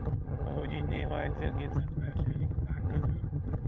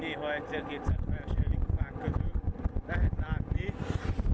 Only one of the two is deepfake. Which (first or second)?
first